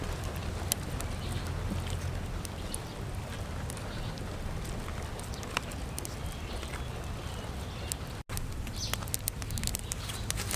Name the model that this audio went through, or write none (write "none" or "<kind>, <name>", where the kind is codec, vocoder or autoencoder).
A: none